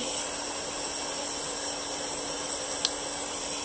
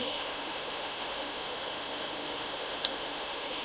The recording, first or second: first